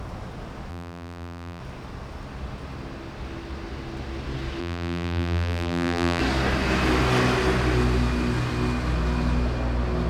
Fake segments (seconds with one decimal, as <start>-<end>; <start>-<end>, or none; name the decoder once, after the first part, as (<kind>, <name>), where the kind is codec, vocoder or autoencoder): 0.7-1.6 (vocoder, BigVGAN v2); 4.6-6.2